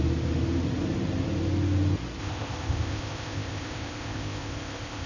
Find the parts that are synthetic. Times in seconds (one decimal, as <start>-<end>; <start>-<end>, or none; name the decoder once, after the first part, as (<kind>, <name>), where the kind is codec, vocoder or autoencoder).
2.2-5.1 (codec, ZipCodec)